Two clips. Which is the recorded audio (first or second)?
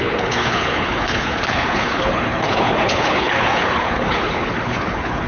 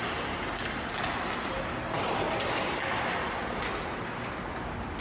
second